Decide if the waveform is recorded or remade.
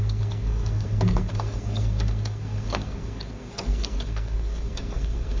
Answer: remade